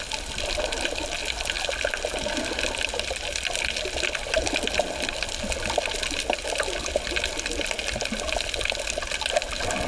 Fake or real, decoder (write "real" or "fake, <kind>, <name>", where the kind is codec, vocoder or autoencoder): real